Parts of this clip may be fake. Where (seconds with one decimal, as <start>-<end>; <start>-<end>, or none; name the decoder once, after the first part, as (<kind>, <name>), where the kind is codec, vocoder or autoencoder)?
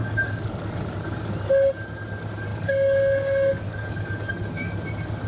0.0-0.7 (codec, DAC); 2.5-4.3